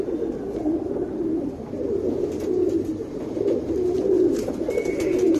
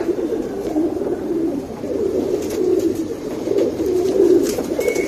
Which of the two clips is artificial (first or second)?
second